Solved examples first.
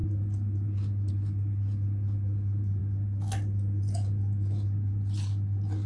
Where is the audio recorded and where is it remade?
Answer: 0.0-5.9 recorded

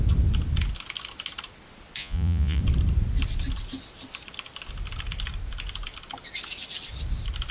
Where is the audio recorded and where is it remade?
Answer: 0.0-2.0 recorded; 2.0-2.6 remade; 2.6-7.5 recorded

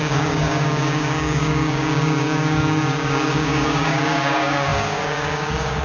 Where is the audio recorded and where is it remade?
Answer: 0.0-5.8 remade